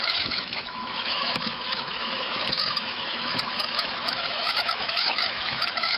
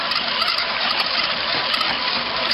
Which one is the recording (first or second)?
second